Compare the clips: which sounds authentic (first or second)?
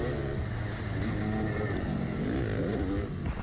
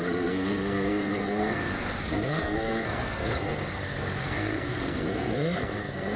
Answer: first